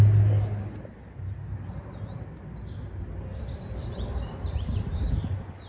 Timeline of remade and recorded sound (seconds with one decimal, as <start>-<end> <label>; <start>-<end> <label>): 0.0-3.3 recorded; 3.3-5.1 remade; 5.1-5.7 recorded